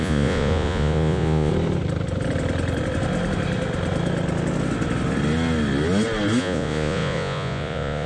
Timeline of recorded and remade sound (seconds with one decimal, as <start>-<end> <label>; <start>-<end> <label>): 0.0-1.5 remade; 1.5-6.4 recorded; 6.4-8.1 remade